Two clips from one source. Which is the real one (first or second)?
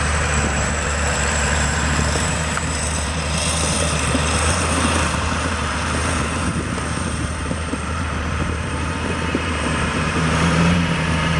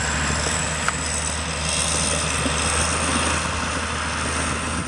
second